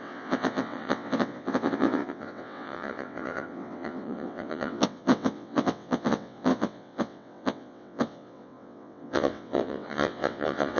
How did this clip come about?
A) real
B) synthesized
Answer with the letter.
B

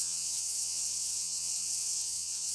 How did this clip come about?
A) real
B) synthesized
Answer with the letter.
B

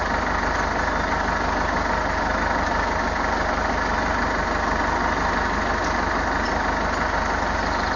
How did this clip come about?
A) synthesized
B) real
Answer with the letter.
B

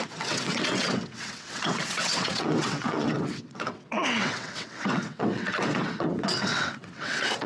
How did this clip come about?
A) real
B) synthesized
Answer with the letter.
B